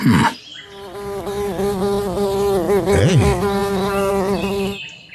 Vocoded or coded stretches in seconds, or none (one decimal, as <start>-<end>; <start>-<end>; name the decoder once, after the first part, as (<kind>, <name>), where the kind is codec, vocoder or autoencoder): none